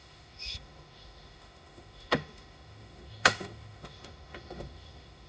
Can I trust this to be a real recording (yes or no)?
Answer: no